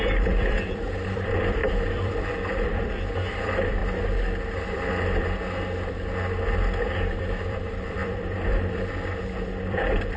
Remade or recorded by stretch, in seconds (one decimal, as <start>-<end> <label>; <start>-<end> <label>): 0.0-3.8 remade; 3.8-6.8 recorded; 6.8-10.2 remade